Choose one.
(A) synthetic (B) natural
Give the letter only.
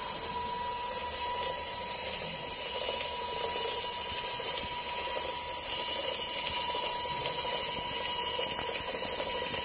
B